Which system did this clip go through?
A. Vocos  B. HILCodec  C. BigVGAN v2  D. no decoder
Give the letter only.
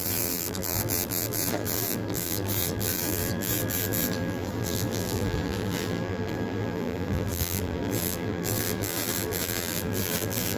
C